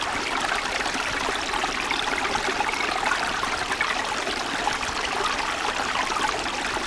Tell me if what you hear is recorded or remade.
recorded